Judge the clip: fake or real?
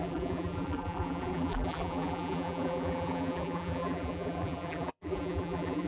fake